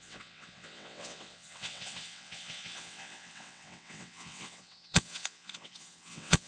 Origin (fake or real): fake